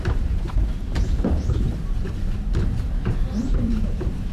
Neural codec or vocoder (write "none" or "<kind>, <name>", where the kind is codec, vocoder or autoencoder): vocoder, BigVGAN v2